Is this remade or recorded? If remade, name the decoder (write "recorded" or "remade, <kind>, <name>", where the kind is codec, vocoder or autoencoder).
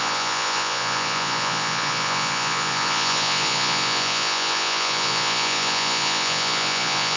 remade, vocoder, Vocos